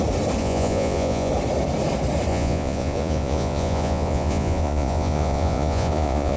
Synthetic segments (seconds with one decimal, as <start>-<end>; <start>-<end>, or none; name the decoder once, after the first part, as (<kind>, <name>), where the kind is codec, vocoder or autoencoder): 0.4-1.3 (vocoder, Vocos); 2.3-6.4